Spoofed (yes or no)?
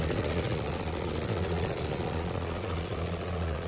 yes